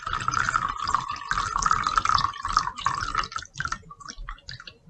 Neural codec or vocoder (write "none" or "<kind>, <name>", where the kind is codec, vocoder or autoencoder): none